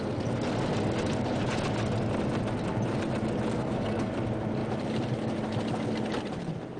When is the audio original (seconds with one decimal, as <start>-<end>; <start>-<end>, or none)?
0.0-3.5; 4.1-6.8